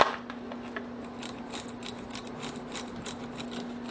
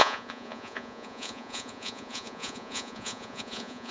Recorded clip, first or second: first